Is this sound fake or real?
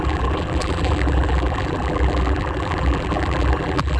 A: fake